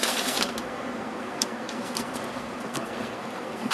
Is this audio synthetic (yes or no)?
yes